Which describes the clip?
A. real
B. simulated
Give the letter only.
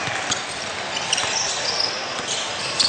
A